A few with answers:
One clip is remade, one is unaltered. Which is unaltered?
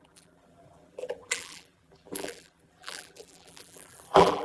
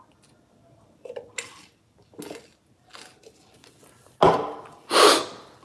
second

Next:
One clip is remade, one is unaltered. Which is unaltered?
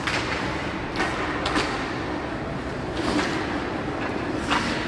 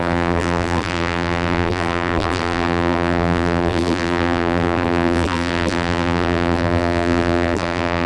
first